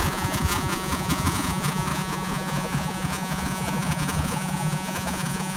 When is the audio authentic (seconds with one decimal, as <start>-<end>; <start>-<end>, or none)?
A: none